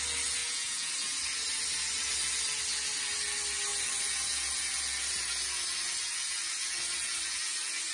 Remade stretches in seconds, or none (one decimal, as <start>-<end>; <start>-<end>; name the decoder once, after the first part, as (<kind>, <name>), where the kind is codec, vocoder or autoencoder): 0.4-0.9 (vocoder, Vocos)